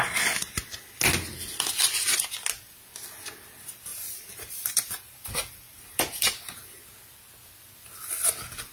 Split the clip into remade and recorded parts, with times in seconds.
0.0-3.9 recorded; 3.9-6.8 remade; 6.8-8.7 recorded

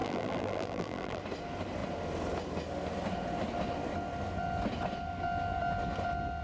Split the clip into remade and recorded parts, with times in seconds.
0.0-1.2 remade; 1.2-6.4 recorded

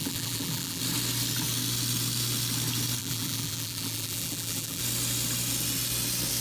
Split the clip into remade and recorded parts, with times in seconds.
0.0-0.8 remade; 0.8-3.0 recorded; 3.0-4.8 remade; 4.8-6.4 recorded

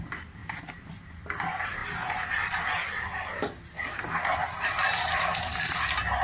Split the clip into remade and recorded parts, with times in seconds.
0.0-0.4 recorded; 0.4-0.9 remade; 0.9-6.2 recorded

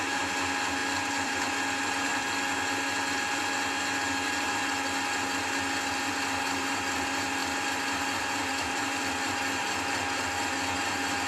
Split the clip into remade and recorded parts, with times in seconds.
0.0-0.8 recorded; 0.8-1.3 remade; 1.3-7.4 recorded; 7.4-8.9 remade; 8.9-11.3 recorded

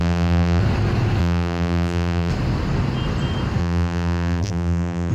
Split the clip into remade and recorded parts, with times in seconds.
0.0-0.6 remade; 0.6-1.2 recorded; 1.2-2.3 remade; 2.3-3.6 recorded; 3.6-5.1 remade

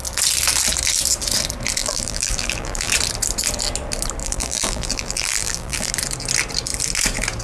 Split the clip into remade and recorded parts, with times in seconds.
0.0-1.8 recorded; 1.8-2.9 remade; 2.9-4.2 recorded; 4.2-5.9 remade; 5.9-7.4 recorded